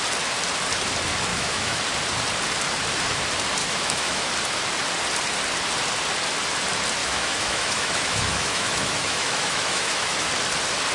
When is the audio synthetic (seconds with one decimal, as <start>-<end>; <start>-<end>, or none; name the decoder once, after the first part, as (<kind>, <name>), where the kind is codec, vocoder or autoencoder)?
1.3-1.8 (autoencoder, DAC-VAE); 3.6-4.3; 7.0-10.3